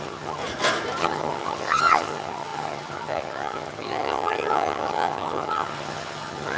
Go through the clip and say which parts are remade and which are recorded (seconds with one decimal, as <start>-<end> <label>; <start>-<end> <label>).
0.0-0.4 remade; 0.4-1.0 recorded; 1.0-6.6 remade